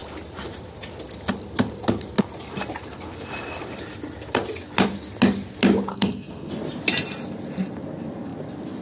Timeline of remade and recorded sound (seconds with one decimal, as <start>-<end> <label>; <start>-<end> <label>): 0.0-5.9 recorded; 5.9-6.5 remade; 6.5-8.8 recorded

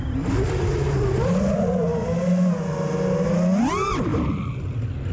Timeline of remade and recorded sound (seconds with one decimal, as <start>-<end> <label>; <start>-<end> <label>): 0.0-5.1 recorded

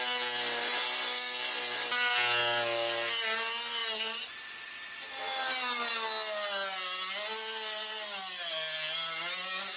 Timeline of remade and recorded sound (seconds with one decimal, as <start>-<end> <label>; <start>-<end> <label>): 0.0-9.8 recorded

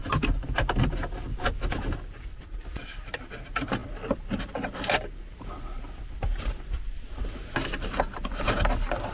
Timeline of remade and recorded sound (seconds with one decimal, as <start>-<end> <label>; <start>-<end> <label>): 0.0-9.1 recorded

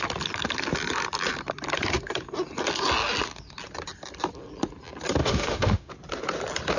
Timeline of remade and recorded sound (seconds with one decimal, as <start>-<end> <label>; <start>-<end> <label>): 0.0-5.2 recorded; 5.2-5.9 remade; 5.9-6.8 recorded

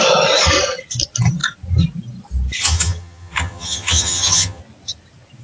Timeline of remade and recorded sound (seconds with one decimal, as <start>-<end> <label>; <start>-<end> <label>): 0.0-2.6 recorded; 2.6-4.6 remade; 4.6-5.4 recorded

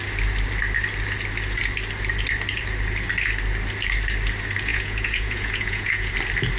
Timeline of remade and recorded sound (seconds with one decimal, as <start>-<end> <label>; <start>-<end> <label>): 0.0-4.7 recorded; 4.7-6.1 remade; 6.1-6.6 recorded

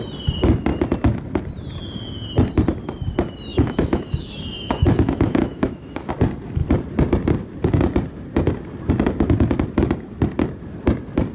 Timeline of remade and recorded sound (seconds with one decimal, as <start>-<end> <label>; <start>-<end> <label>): 0.0-3.5 recorded; 3.5-6.1 remade; 6.1-11.3 recorded